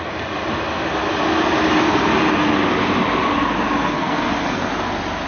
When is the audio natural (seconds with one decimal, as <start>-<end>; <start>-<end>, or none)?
0.0-3.8; 4.7-5.3